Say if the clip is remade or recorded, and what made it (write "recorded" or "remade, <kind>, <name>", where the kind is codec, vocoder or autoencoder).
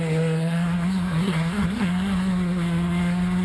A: remade, codec, SNAC